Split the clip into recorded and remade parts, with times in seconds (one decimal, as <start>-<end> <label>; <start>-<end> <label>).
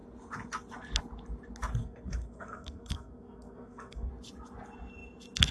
0.0-1.8 recorded; 1.8-4.1 remade; 4.1-5.5 recorded